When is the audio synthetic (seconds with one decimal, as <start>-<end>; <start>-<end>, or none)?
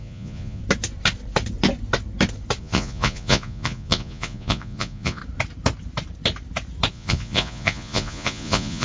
0.0-0.6; 2.6-5.2; 6.9-8.8